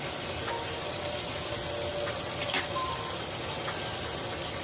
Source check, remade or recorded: recorded